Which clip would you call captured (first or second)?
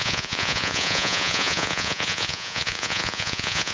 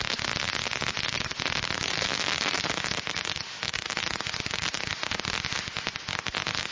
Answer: second